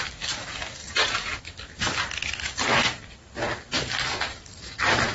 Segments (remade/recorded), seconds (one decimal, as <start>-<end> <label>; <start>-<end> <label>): 0.0-0.8 recorded; 0.8-3.1 remade; 3.1-3.7 recorded; 3.7-5.1 remade